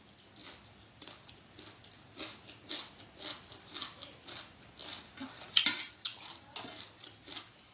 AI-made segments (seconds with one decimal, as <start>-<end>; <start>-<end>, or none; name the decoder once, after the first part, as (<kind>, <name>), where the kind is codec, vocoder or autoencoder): none